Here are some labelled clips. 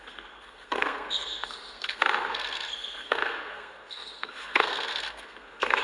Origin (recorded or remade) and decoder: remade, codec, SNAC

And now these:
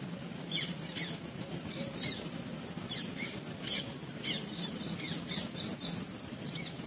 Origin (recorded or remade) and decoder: remade, vocoder, BigVGAN v2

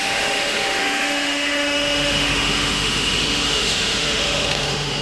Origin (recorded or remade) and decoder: remade, autoencoder, DAC-VAE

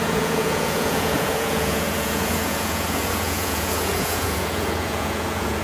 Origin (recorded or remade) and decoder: remade, vocoder, Vocos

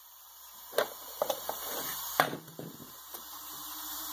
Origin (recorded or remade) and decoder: remade, vocoder, BigVGAN v2